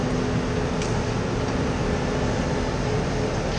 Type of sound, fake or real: real